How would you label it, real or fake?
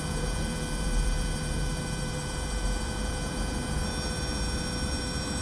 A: fake